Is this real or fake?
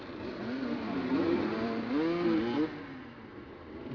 real